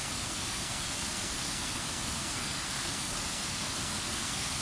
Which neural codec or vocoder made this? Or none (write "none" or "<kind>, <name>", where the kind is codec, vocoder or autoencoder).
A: codec, SNAC